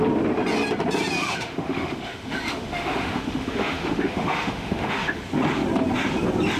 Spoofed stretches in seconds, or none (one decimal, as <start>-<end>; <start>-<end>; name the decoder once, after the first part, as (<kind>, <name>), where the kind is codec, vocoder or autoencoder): 1.2-5.2 (autoencoder, DAC-VAE)